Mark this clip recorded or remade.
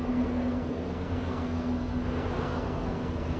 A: remade